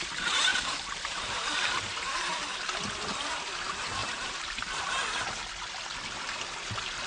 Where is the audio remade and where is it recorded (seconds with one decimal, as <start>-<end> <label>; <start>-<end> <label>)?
0.0-0.5 recorded; 0.5-2.4 remade; 2.4-4.0 recorded; 4.0-4.9 remade; 4.9-7.1 recorded